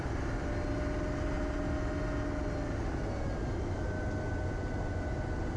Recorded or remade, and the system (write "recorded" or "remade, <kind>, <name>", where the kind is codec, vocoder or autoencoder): recorded